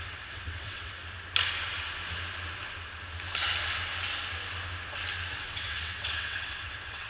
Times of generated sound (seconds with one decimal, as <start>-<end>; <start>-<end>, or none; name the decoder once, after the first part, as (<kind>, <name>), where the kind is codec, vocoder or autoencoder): 0.0-1.0 (vocoder, WaveNeXt); 5.3-7.1

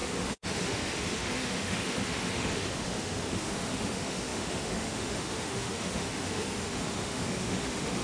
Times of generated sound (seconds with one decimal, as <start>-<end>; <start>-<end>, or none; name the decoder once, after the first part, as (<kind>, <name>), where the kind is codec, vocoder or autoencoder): 0.0-8.0 (autoencoder, DAC-VAE)

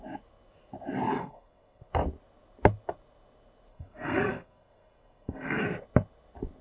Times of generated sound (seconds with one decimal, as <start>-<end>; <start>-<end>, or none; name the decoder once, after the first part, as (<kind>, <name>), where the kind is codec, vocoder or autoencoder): 1.2-1.9 (codec, SNAC); 3.7-5.6

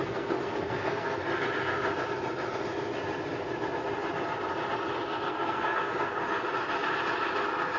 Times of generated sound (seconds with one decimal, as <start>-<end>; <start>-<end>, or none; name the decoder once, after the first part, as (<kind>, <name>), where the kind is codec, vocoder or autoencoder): 0.0-1.2 (codec, SNAC); 5.1-6.1

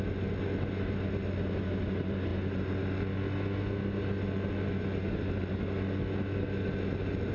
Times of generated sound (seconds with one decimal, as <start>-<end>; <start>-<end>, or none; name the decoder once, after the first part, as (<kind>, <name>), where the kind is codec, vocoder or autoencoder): none

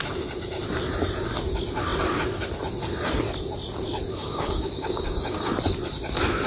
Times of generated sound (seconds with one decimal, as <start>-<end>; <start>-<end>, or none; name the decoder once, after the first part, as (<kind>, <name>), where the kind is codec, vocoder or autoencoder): 4.2-5.5 (codec, DAC)

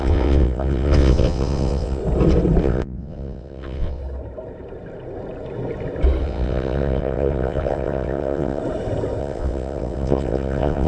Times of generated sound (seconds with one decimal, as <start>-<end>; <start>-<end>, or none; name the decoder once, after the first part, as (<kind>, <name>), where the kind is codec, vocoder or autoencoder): 0.0-2.0 (vocoder, WaveNeXt); 2.6-4.0; 6.2-8.6; 9.2-10.9

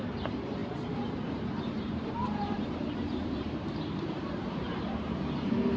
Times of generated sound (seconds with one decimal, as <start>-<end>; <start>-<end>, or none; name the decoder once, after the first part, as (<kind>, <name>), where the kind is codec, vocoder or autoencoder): 0.0-5.8 (vocoder, BigVGAN v2)